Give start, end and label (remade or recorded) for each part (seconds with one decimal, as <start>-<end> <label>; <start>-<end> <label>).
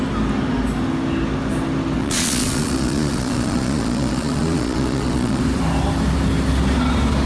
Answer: 0.0-2.0 recorded; 2.0-5.4 remade; 5.4-7.3 recorded